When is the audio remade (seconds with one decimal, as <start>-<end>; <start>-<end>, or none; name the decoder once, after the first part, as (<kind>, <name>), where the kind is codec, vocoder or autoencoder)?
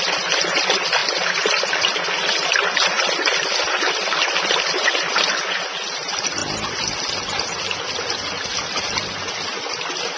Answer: none